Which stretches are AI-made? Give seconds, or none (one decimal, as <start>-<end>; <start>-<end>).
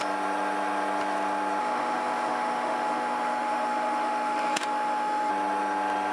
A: 1.6-5.3